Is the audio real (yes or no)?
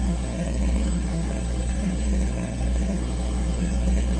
no